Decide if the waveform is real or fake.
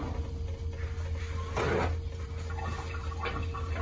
real